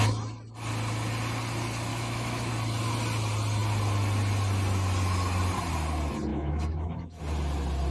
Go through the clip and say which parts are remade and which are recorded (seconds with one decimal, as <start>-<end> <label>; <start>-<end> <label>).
0.0-1.9 recorded; 1.9-2.5 remade; 2.5-6.3 recorded; 6.3-7.2 remade; 7.2-7.9 recorded